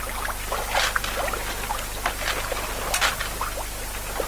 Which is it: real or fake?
real